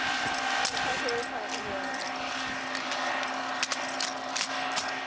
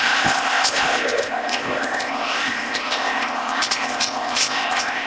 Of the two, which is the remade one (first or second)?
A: second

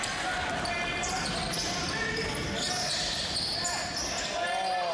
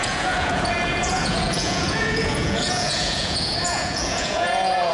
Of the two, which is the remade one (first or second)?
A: second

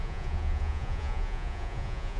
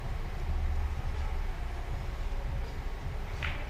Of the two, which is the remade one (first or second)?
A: first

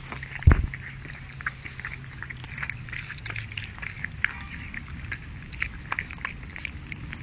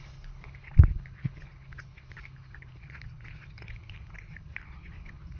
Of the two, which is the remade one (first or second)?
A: second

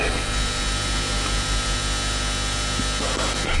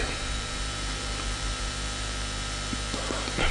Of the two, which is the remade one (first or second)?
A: second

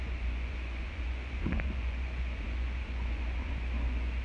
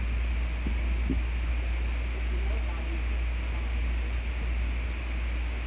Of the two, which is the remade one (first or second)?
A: first